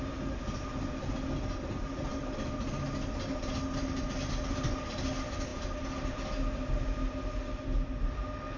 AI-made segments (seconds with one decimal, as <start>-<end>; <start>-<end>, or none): none